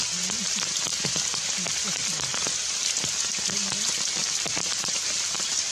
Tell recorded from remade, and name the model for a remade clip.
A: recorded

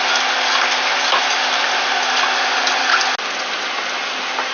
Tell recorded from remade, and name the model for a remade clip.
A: recorded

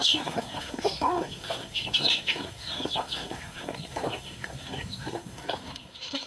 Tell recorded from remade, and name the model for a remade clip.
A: remade, codec, SNAC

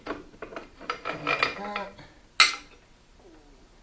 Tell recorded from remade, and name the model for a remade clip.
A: recorded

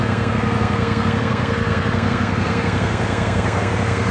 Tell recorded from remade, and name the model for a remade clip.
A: remade, codec, SNAC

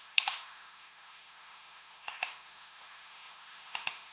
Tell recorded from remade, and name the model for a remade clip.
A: remade, autoencoder, DAC-VAE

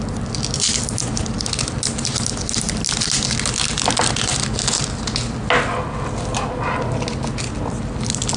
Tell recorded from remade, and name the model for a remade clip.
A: recorded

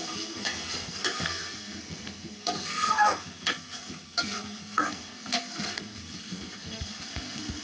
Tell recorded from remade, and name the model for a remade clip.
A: remade, codec, SNAC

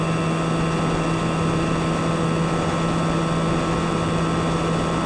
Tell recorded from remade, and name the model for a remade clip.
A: recorded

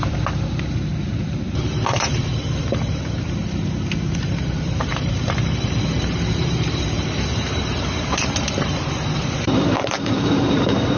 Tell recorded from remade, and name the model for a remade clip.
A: remade, vocoder, BigVGAN v2